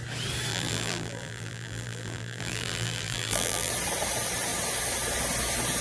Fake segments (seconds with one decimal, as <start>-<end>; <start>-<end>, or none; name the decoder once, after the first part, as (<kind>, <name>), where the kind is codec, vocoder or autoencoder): 0.5-3.7 (vocoder, BigVGAN v2)